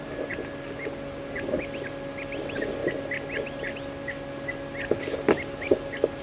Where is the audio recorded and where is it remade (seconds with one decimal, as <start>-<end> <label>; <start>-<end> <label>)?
0.0-6.2 recorded